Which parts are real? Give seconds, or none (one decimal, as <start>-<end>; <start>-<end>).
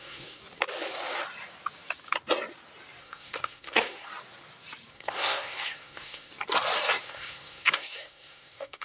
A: 0.4-3.0; 4.1-4.9; 6.3-7.0